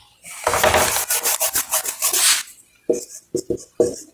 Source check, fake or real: real